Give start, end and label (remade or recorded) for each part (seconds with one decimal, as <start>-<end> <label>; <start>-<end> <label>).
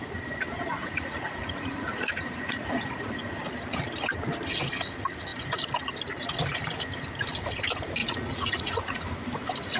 0.0-0.8 recorded; 0.8-3.2 remade; 3.2-8.0 recorded; 8.0-9.0 remade; 9.0-9.8 recorded